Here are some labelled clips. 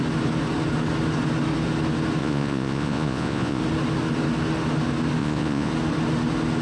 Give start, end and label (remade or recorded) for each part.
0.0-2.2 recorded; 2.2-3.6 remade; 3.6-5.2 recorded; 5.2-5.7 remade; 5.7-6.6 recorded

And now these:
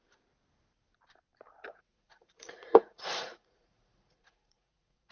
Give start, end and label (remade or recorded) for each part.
0.0-1.7 recorded; 1.7-5.1 remade

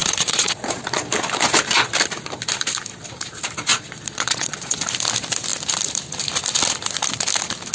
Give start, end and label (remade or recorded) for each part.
0.0-0.8 remade; 0.8-3.7 recorded; 3.7-4.8 remade; 4.8-7.7 recorded